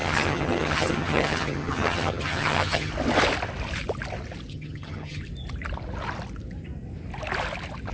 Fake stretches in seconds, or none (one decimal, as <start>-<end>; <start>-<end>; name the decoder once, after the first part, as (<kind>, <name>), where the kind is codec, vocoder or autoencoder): 0.0-2.9 (vocoder, HiFi-GAN); 4.5-5.2